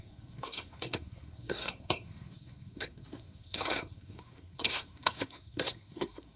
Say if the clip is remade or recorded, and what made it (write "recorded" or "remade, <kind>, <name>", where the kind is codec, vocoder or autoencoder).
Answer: remade, codec, SNAC